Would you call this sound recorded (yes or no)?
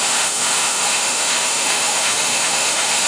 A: no